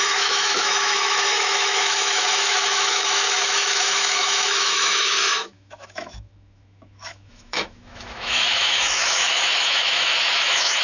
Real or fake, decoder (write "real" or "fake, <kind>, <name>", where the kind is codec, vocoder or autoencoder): fake, autoencoder, DAC-VAE